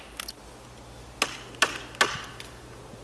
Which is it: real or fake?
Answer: real